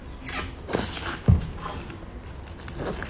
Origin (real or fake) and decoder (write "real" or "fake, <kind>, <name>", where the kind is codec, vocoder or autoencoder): real